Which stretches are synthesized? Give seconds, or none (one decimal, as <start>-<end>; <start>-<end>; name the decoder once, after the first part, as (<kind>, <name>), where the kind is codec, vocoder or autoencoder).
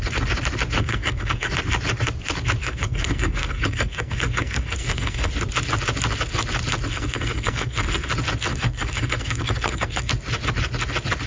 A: 0.8-1.5 (codec, SNAC); 2.6-5.3; 6.9-8.1; 8.5-10.1